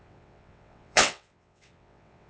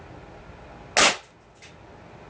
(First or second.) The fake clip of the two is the first